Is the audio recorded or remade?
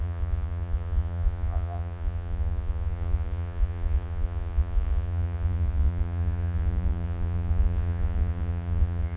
remade